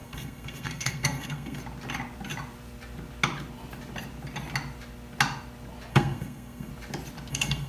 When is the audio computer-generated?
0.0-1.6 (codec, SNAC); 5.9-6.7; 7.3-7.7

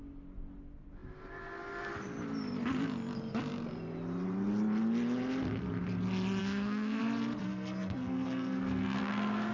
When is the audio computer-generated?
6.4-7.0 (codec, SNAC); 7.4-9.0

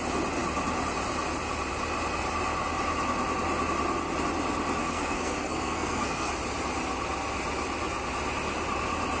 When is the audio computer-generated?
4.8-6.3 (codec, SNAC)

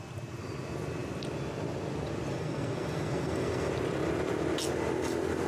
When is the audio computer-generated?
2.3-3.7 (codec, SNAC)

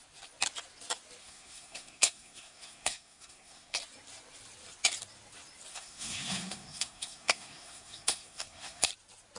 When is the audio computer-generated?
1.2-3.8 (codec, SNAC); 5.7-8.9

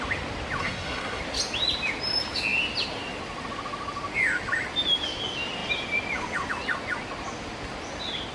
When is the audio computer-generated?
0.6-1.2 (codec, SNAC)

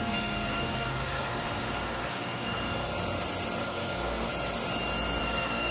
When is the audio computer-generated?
0.0-2.9 (codec, SNAC); 3.6-4.3; 5.2-5.7

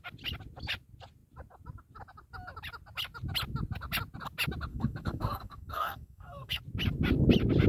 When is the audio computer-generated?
4.7-6.6 (codec, SNAC)